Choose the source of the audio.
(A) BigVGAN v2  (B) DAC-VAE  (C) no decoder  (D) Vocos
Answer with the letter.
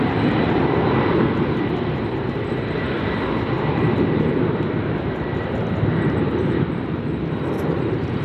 C